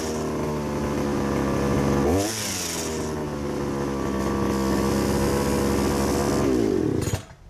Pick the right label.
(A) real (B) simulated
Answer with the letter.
A